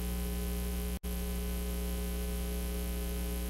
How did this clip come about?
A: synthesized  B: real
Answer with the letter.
B